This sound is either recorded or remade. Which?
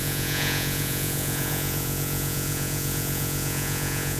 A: remade